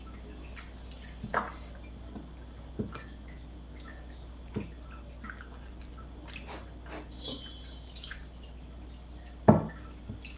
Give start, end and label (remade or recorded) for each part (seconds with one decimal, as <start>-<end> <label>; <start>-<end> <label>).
0.0-10.4 recorded